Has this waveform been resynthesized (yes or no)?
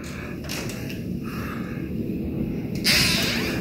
no